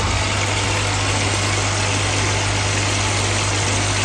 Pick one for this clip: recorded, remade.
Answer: recorded